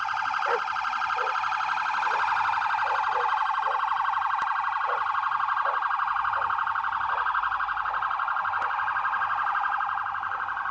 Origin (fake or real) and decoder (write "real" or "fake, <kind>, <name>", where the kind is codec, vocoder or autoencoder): real